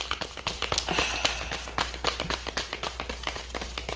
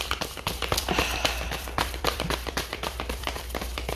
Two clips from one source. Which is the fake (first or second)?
second